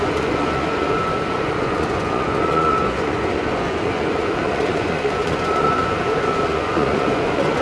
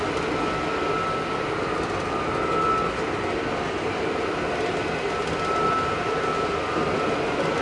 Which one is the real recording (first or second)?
second